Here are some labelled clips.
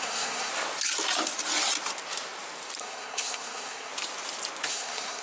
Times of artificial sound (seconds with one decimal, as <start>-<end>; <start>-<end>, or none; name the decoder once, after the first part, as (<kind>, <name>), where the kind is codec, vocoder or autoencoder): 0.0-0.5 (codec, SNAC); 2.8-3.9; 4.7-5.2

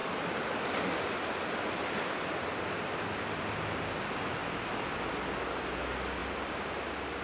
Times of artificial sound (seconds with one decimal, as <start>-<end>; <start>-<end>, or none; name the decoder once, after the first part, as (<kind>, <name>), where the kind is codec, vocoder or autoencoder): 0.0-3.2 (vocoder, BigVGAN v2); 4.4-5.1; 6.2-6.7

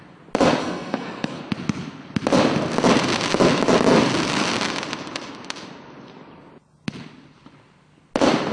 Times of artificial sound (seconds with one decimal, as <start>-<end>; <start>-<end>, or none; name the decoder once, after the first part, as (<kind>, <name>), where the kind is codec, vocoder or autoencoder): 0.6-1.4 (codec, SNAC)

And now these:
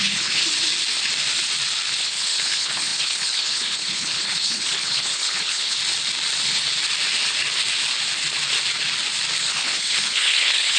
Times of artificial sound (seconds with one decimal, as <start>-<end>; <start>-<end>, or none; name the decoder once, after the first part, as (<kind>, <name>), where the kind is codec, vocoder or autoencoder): 0.0-0.4 (codec, HILCodec); 2.0-5.8; 9.4-10.8

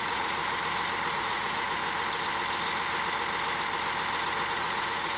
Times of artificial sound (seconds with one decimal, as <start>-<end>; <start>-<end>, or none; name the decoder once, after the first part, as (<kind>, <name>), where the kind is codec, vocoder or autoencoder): 0.0-0.4 (vocoder, Vocos); 1.1-1.8; 4.5-5.2